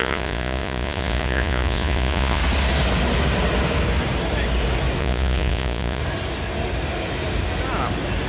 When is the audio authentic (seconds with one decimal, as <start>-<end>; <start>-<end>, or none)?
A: 2.4-5.0; 6.0-8.3